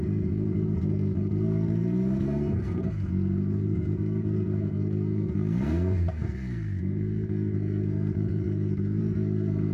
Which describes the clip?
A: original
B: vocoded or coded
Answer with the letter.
B